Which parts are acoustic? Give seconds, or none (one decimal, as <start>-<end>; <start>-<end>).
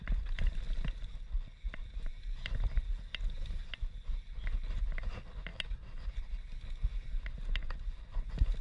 0.0-8.6